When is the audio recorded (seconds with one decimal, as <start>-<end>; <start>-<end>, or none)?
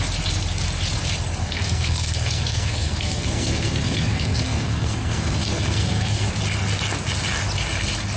0.0-1.4; 6.3-8.2